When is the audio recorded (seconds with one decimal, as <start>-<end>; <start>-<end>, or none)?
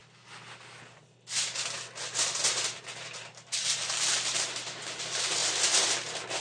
0.0-2.4; 5.4-6.4